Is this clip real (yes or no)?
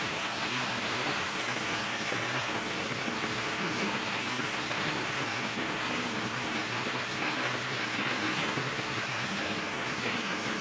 no